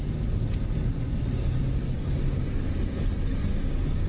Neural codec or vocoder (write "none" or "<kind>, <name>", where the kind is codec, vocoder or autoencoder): none